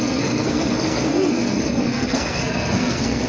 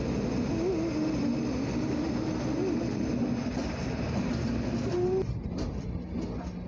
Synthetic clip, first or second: first